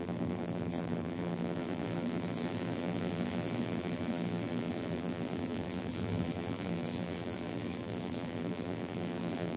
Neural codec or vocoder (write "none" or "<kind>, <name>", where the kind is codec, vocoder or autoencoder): vocoder, BigVGAN v2